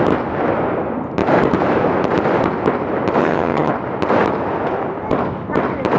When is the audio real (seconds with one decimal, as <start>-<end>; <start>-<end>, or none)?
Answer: 0.0-3.2; 3.7-6.0